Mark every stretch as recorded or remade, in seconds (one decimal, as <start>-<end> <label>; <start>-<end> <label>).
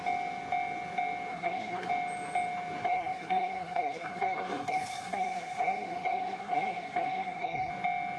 0.0-1.3 recorded; 1.3-1.9 remade; 1.9-2.8 recorded; 2.8-7.7 remade; 7.7-8.2 recorded